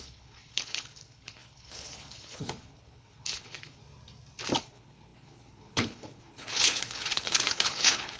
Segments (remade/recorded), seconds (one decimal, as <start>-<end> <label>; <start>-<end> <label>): 0.0-3.8 remade; 3.8-4.6 recorded; 4.6-8.2 remade